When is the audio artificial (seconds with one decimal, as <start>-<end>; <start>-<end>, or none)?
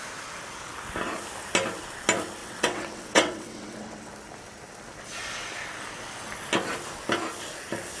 2.4-4.1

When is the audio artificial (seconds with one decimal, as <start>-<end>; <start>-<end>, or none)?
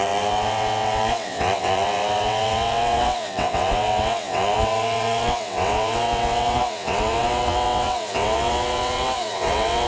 0.0-9.9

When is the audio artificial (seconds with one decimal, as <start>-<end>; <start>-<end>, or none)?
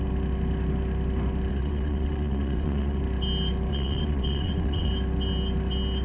1.5-3.0; 3.7-4.9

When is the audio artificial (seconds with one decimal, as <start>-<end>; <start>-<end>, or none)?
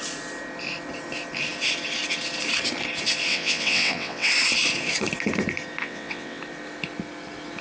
3.3-4.3; 5.8-6.4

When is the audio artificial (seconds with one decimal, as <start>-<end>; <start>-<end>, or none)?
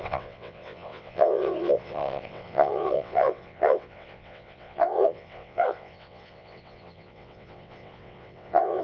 0.0-8.8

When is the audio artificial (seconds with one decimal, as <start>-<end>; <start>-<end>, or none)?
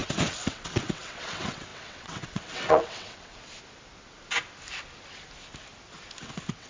0.0-3.3; 6.2-6.7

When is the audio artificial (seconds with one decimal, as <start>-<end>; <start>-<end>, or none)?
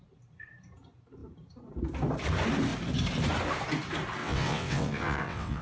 4.2-5.6